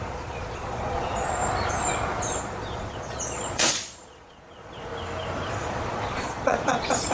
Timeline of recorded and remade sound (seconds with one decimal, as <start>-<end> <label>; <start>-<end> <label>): 0.0-1.4 remade; 1.4-2.4 recorded; 2.4-4.9 remade; 4.9-5.5 recorded; 5.5-7.1 remade